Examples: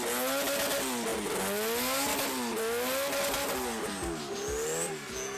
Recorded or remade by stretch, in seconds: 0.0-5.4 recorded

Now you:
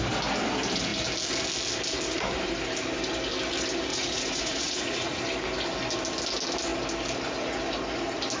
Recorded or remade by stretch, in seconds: 0.0-3.9 recorded; 3.9-5.2 remade; 5.2-8.4 recorded

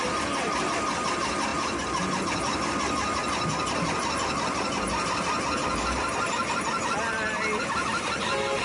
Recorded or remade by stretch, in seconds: 0.0-8.6 recorded

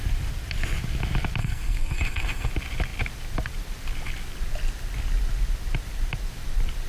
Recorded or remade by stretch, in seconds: 0.0-1.4 recorded; 1.4-2.5 remade; 2.5-6.9 recorded

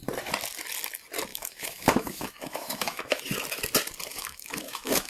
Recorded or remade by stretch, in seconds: 0.0-1.3 recorded; 1.3-3.2 remade; 3.2-4.1 recorded; 4.1-5.1 remade